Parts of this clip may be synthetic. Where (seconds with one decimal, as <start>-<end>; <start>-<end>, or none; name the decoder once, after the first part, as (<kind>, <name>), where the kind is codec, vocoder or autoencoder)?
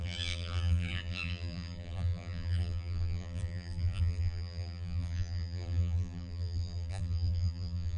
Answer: 0.0-8.0 (vocoder, BigVGAN v2)